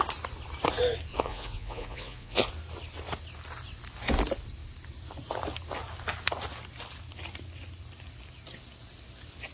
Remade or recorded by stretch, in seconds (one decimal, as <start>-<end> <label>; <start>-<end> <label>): 0.0-1.1 recorded; 1.1-2.5 remade; 2.5-9.5 recorded